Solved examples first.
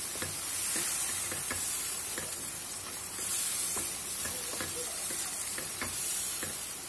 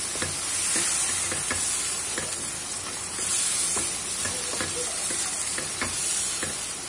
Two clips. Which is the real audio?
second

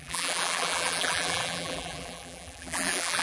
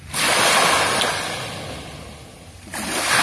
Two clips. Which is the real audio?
second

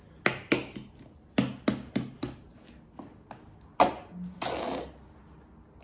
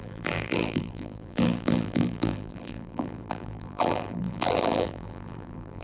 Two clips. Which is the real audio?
first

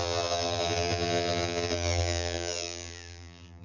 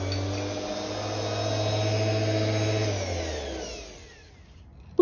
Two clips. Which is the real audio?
second